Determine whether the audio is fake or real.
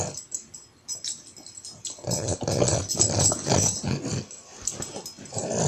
real